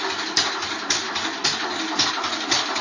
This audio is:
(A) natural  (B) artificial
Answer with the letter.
A